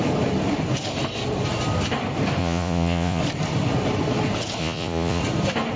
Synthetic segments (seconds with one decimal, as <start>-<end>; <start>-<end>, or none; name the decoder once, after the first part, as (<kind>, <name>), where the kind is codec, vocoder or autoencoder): 2.4-3.2 (vocoder, Vocos); 4.6-5.2

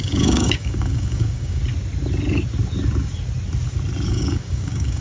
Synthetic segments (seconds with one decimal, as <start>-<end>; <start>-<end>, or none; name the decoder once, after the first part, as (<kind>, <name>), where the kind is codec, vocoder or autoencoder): 0.0-1.6 (codec, DAC); 4.1-5.0

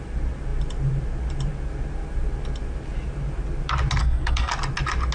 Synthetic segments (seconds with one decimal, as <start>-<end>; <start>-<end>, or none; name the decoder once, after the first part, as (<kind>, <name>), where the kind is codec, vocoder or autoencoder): 4.0-4.5 (codec, SNAC)

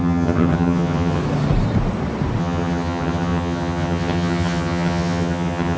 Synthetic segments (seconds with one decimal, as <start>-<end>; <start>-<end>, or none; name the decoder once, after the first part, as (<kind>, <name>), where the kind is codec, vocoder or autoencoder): 0.0-1.2 (vocoder, HiFi-GAN); 2.4-5.8

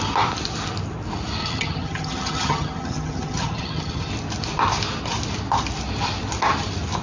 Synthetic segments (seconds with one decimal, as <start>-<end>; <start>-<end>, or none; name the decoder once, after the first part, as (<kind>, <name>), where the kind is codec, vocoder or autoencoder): 1.4-4.1 (vocoder, HiFi-GAN)